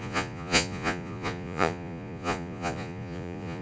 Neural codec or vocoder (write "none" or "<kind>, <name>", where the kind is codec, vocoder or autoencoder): vocoder, Vocos